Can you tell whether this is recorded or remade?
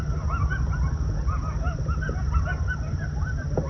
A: recorded